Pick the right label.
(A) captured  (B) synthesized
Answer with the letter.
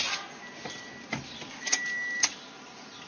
A